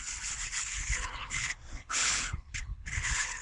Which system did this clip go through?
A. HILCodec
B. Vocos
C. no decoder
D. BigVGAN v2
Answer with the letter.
A